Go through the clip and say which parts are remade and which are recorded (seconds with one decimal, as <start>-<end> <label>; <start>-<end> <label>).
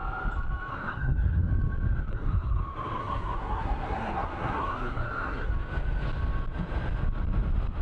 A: 0.0-0.7 recorded; 0.7-1.5 remade; 1.5-2.1 recorded; 2.1-2.6 remade; 2.6-3.0 recorded; 3.0-5.5 remade; 5.5-7.8 recorded